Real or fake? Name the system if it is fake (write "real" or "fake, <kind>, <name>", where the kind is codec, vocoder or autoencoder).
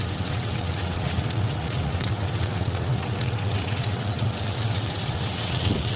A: fake, vocoder, WaveNeXt